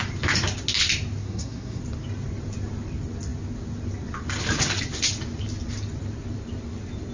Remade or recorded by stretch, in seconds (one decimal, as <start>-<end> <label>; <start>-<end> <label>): 0.0-1.2 recorded; 1.2-1.8 remade; 1.8-7.1 recorded